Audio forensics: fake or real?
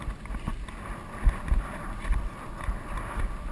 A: real